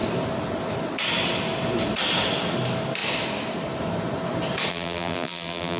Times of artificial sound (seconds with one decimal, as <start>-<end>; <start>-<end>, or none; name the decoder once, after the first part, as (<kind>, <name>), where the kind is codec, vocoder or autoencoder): 4.7-5.8 (vocoder, BigVGAN v2)

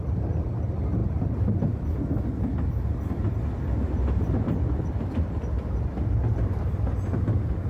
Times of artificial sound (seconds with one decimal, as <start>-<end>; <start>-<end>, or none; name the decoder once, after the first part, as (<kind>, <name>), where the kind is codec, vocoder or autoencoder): 1.0-2.0 (vocoder, BigVGAN v2); 2.5-7.1

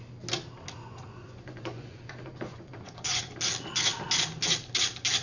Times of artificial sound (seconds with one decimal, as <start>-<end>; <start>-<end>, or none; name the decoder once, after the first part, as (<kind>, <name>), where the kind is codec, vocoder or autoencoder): 0.8-3.2 (vocoder, Vocos)

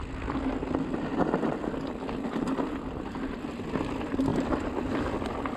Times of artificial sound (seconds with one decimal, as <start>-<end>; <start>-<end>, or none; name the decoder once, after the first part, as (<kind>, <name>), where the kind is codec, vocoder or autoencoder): none

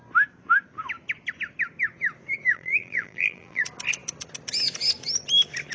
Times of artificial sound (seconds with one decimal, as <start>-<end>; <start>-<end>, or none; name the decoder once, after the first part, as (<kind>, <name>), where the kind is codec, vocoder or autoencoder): 2.5-3.6 (vocoder, BigVGAN v2)